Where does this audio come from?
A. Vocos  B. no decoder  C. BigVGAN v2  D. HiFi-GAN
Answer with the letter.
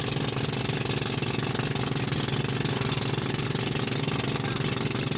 B